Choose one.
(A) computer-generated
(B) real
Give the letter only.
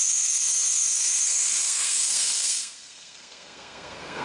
A